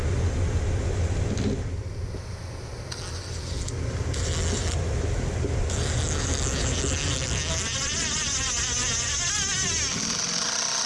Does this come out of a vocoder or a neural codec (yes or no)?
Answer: no